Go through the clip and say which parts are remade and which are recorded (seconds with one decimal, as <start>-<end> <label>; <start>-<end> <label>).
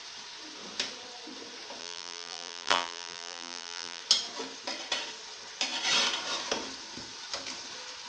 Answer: 0.0-1.8 recorded; 1.8-4.0 remade; 4.0-8.1 recorded